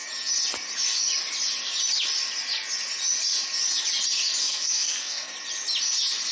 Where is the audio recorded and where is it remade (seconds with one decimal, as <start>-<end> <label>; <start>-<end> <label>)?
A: 0.0-4.4 recorded; 4.4-5.3 remade; 5.3-6.3 recorded